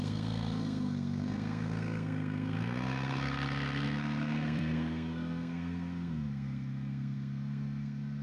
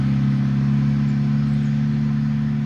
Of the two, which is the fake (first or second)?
first